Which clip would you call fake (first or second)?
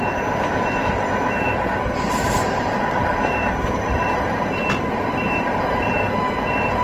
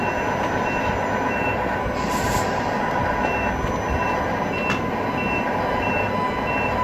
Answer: first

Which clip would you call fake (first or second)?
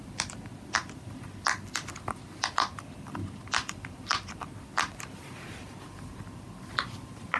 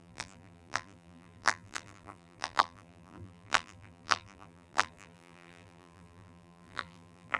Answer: second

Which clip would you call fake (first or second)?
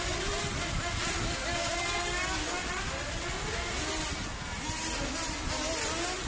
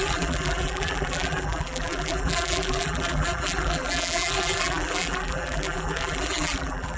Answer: second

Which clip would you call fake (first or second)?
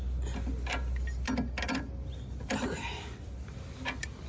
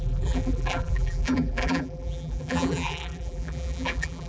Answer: second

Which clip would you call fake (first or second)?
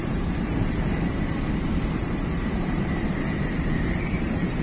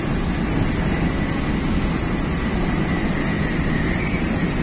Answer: first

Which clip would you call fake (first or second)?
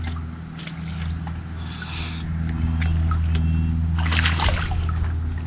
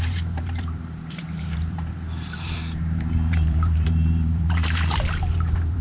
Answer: second